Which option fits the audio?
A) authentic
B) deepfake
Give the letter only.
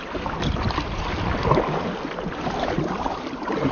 A